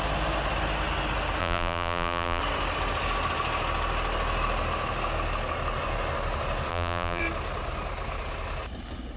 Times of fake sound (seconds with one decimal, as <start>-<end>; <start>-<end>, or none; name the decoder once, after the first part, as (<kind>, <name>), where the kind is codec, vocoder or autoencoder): 1.4-2.4 (vocoder, BigVGAN v2); 6.7-7.2